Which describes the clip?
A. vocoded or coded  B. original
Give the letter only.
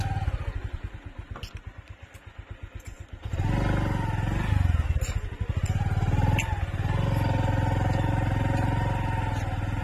B